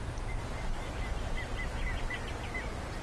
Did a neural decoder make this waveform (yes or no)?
no